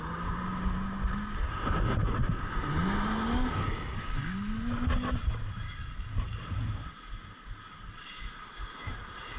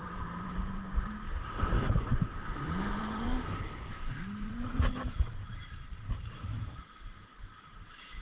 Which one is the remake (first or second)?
second